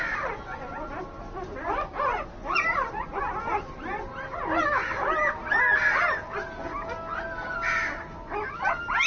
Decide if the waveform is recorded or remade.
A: recorded